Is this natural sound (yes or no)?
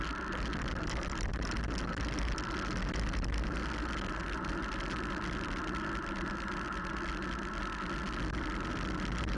yes